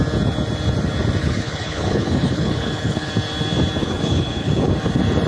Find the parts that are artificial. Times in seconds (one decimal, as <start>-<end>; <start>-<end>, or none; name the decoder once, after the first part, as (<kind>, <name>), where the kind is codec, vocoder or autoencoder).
1.2-3.1 (codec, HILCodec); 3.8-4.7